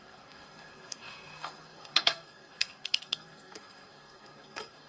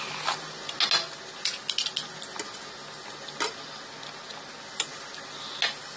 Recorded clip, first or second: second